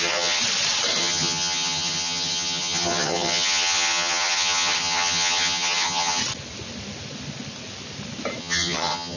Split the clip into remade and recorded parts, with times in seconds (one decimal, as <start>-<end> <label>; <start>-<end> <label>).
0.0-0.4 remade; 0.4-1.0 recorded; 1.0-6.2 remade; 6.2-8.4 recorded; 8.4-9.2 remade